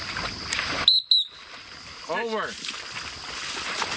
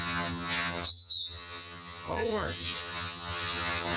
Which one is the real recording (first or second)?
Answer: first